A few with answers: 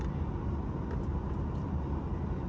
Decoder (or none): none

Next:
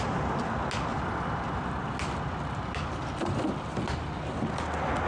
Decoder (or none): none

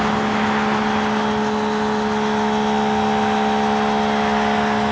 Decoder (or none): none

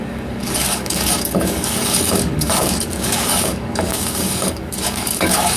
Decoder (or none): codec, DAC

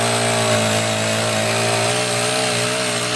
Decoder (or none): none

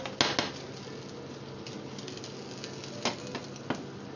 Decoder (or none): none